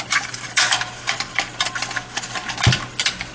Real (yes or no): yes